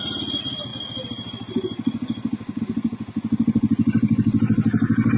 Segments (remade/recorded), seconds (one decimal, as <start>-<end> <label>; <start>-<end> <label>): 0.0-5.2 recorded